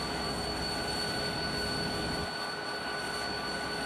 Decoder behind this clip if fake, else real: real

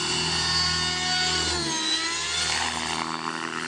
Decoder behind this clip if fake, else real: real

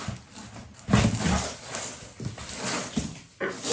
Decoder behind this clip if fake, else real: real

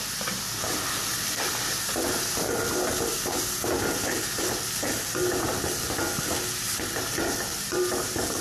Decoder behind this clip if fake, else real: real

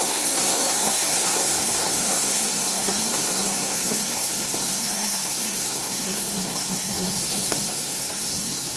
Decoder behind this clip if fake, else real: fake, codec, SNAC